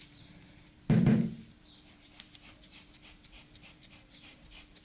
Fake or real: fake